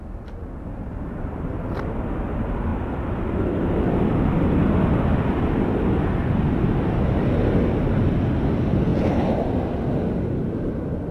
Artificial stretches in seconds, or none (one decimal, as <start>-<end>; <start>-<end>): none